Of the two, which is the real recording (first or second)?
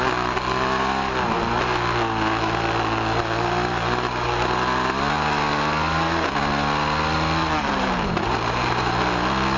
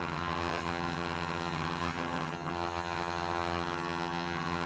first